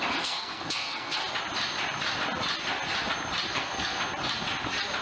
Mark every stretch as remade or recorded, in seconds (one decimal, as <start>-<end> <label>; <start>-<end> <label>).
0.0-1.2 remade; 1.2-3.5 recorded; 3.5-4.0 remade; 4.0-5.0 recorded